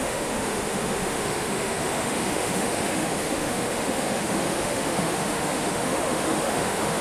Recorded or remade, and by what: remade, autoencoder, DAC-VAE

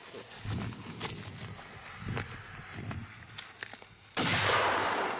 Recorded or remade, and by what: recorded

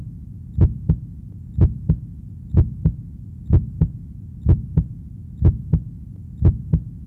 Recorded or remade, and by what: recorded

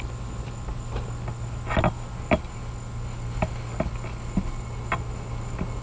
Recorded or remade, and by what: recorded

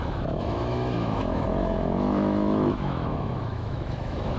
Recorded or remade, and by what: remade, autoencoder, DAC-VAE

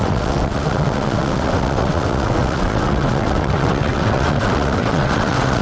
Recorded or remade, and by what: remade, vocoder, WaveNeXt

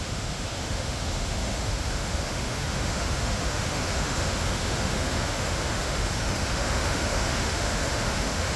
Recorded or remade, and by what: remade, autoencoder, DAC-VAE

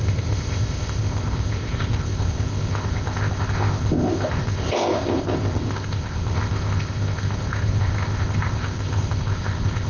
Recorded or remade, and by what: remade, codec, ZipCodec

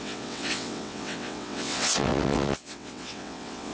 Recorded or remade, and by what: remade, vocoder, WaveNeXt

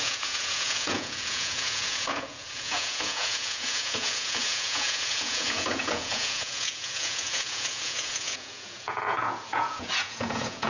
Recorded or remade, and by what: remade, vocoder, Vocos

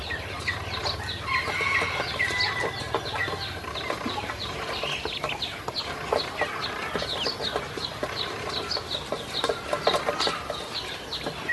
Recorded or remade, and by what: recorded